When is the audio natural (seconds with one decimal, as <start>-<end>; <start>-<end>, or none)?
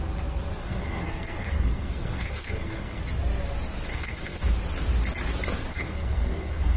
0.0-0.6; 3.0-3.9; 4.5-5.7